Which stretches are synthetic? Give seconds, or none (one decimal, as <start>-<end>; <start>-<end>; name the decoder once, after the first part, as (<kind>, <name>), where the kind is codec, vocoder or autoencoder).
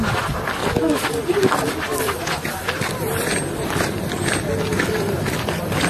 0.6-4.1 (vocoder, BigVGAN v2); 4.7-5.9